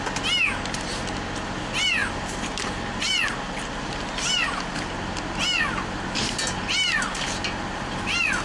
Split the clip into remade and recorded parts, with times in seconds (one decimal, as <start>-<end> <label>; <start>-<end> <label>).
0.0-8.4 recorded

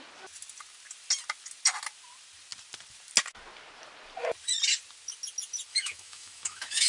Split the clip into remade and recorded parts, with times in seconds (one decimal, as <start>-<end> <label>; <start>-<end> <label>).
0.0-5.7 recorded; 5.7-6.9 remade

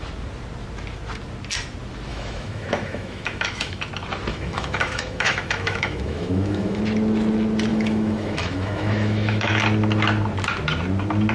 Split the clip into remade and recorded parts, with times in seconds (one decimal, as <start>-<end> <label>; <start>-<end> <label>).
0.0-2.1 recorded; 2.1-3.9 remade; 3.9-4.3 recorded; 4.3-6.8 remade; 6.8-7.7 recorded; 7.7-9.5 remade; 9.5-11.3 recorded

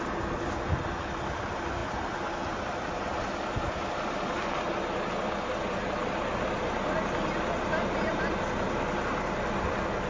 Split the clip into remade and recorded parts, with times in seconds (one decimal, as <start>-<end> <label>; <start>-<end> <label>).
0.0-10.1 recorded

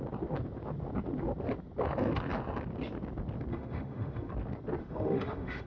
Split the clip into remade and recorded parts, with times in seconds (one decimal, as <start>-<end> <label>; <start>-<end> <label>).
0.0-3.5 recorded; 3.5-4.3 remade; 4.3-4.8 recorded; 4.8-5.7 remade

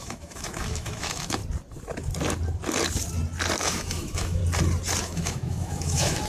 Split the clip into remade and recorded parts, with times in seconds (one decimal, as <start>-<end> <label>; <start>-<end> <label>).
0.0-1.4 remade; 1.4-3.6 recorded; 3.6-4.4 remade; 4.4-5.0 recorded; 5.0-6.3 remade

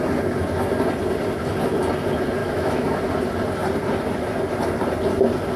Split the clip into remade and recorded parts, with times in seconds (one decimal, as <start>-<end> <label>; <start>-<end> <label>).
0.0-2.4 recorded; 2.4-3.0 remade; 3.0-5.6 recorded

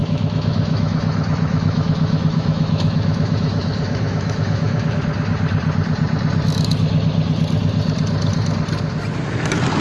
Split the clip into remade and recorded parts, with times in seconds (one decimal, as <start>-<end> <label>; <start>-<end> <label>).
0.0-5.0 remade; 5.0-9.8 recorded